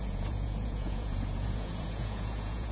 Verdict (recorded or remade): remade